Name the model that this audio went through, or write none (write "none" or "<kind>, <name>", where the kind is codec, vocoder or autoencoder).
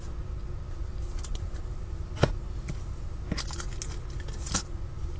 none